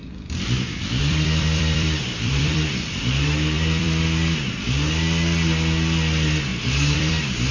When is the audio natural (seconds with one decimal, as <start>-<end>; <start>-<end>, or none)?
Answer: 4.5-6.5; 7.1-7.5